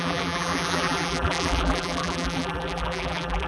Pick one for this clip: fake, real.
fake